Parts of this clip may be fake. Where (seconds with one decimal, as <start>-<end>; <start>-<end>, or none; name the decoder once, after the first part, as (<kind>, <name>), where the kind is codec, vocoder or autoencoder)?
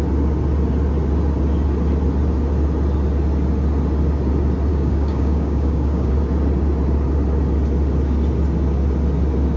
4.7-6.1 (codec, DAC)